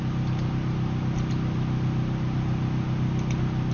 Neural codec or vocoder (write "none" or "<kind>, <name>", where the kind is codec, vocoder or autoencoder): none